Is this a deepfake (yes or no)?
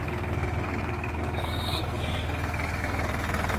yes